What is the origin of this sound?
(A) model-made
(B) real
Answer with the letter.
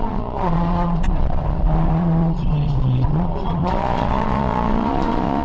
A